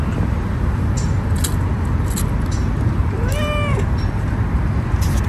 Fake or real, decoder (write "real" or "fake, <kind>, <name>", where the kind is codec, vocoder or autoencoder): real